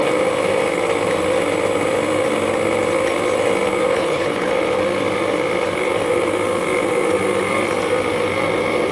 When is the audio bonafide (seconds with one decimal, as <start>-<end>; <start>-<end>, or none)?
0.0-3.9; 4.5-8.9